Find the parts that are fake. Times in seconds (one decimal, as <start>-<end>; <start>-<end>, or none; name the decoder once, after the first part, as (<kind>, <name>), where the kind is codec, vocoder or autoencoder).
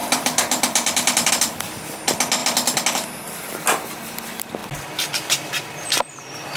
0.0-1.3 (vocoder, BigVGAN v2)